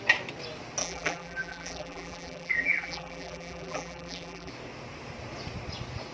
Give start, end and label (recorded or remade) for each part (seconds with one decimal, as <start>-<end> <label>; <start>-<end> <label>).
0.0-0.8 recorded; 0.8-4.5 remade; 4.5-6.1 recorded